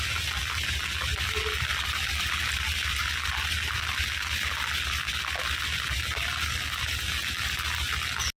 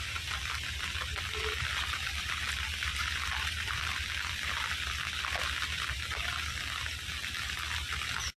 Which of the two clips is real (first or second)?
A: first